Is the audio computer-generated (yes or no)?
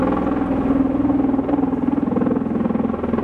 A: no